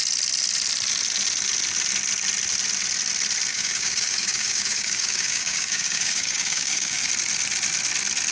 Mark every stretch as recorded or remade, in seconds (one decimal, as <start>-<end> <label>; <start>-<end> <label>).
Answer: 0.0-3.5 recorded; 3.5-7.1 remade; 7.1-8.3 recorded